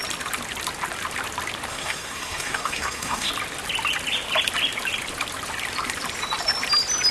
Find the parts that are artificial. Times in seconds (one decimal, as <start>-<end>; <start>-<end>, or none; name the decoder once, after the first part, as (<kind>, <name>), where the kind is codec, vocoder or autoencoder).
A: 1.7-3.3 (codec, SNAC)